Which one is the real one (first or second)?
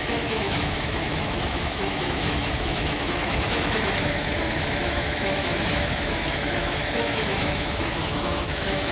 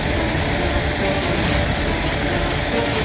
second